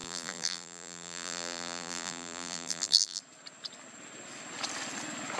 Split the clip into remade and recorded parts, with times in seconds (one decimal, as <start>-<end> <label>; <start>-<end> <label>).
0.0-3.2 remade; 3.2-5.4 recorded